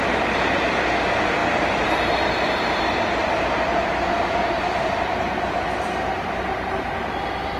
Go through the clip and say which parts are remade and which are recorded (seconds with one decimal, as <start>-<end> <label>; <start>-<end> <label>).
0.0-7.6 recorded